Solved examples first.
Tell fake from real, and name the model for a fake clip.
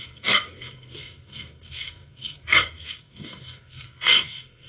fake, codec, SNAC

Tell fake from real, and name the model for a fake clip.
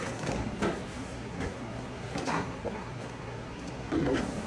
fake, codec, SNAC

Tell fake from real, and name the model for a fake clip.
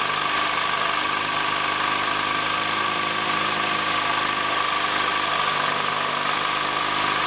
real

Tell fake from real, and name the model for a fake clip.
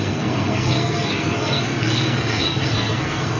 fake, codec, SNAC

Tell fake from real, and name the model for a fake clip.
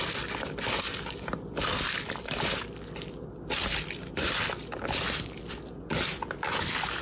real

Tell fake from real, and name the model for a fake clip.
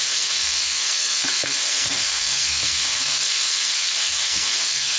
fake, codec, SNAC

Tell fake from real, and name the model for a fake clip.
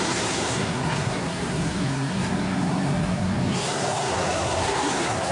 fake, codec, SNAC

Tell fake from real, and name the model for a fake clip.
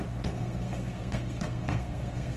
fake, codec, SNAC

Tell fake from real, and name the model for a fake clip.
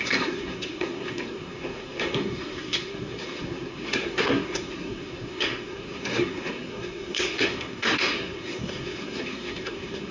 fake, codec, SNAC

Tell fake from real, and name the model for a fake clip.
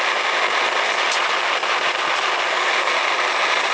real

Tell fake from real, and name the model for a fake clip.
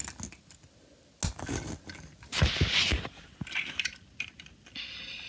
real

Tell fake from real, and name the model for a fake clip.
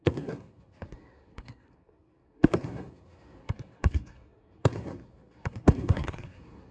fake, codec, SNAC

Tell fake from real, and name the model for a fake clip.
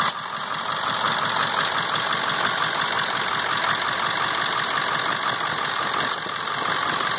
real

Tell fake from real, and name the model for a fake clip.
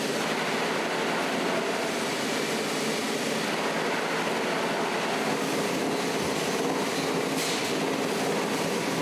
real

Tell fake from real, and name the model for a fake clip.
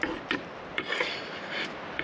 real